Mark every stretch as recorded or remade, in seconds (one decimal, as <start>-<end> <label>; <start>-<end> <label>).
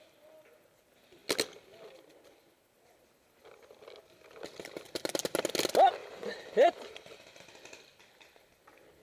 0.0-6.0 recorded; 6.0-7.4 remade; 7.4-9.0 recorded